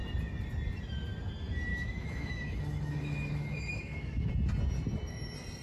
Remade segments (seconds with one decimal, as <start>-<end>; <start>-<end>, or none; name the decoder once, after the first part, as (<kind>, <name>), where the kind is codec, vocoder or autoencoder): 1.7-4.3 (autoencoder, DAC-VAE)